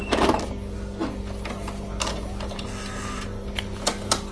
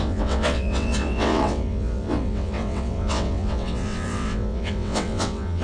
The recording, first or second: first